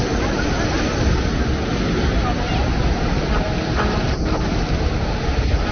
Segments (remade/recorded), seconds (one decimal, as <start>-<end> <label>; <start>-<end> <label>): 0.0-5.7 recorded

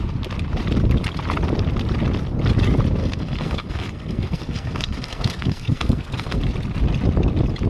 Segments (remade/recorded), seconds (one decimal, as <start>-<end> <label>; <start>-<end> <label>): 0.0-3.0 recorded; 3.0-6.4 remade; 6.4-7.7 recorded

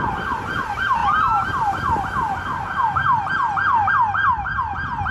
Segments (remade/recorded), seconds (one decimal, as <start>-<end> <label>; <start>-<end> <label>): 0.0-5.1 recorded

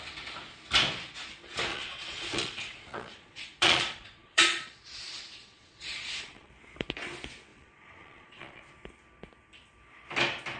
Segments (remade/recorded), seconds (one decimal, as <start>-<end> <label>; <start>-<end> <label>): 0.0-1.7 recorded; 1.7-6.5 remade; 6.5-7.5 recorded; 7.5-8.6 remade; 8.6-10.6 recorded

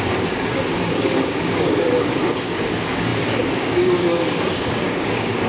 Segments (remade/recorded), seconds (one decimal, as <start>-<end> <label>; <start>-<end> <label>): 0.0-5.5 remade